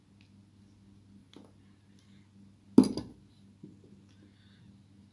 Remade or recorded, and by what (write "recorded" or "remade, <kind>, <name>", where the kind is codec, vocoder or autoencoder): recorded